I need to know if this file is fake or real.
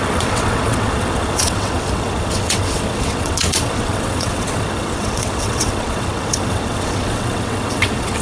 fake